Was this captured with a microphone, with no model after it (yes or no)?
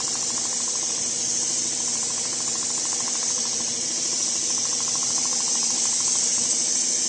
no